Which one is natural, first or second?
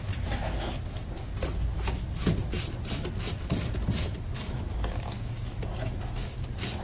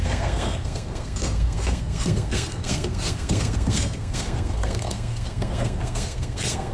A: first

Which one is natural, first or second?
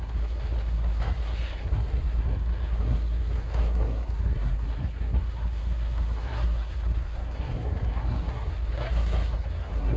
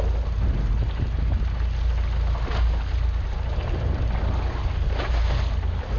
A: second